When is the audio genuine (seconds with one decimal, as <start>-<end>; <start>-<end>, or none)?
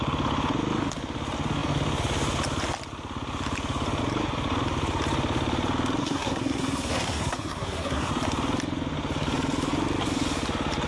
0.0-6.0; 8.1-10.9